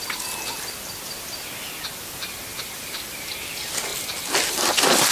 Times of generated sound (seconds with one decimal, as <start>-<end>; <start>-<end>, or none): 2.5-3.5